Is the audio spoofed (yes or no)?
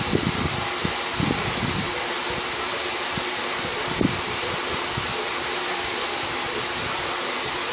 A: no